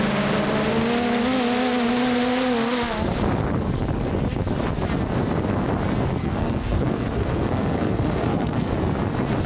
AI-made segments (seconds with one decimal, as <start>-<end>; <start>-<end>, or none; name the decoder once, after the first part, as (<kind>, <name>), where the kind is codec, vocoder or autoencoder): 6.2-8.7 (codec, SNAC)